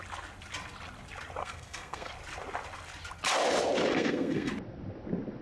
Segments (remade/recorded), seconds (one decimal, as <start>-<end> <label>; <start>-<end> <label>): 0.0-1.4 recorded; 1.4-2.1 remade; 2.1-3.9 recorded; 3.9-4.5 remade; 4.5-5.4 recorded